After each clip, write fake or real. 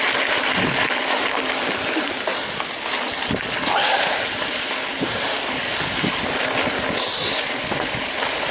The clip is real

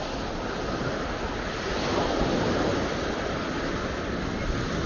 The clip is real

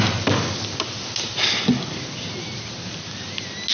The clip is real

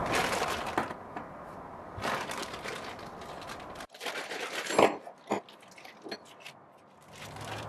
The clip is real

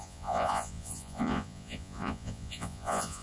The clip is fake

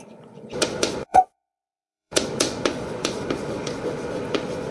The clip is fake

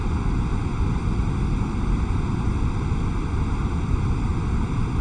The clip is real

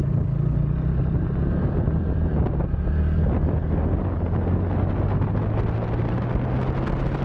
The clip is real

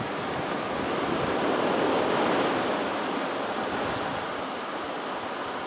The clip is real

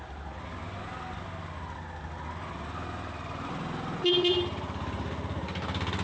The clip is real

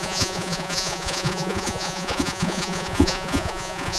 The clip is fake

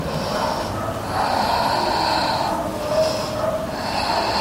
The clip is real